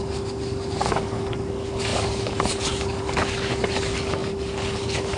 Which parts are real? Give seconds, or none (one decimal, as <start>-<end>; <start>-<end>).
none